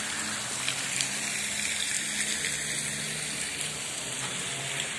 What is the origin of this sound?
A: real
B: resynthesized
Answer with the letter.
A